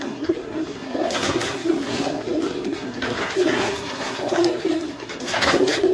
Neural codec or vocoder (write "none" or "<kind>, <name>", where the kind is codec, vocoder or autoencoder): codec, SNAC